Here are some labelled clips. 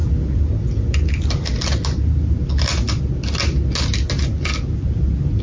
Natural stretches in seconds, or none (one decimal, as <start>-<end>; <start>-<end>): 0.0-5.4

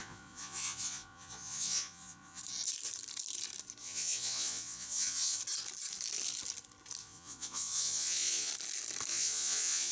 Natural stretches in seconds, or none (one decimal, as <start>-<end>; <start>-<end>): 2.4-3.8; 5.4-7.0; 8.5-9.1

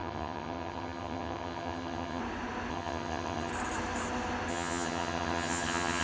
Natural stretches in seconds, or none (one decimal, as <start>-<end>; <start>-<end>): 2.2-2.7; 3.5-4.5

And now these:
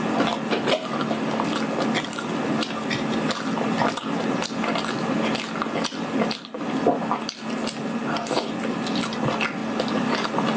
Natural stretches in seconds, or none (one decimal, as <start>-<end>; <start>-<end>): 0.0-10.6